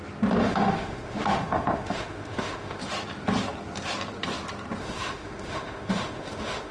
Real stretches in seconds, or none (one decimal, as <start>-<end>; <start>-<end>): 0.0-0.4; 2.8-4.8